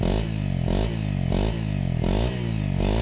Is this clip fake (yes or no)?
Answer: no